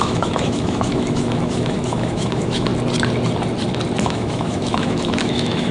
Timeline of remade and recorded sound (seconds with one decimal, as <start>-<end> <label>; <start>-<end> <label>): 0.0-2.7 remade; 2.7-4.0 recorded; 4.0-5.7 remade